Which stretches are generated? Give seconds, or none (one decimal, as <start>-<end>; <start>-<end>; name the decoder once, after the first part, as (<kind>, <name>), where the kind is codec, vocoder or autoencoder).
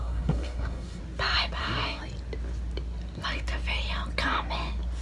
0.0-1.0 (codec, SNAC); 1.6-2.0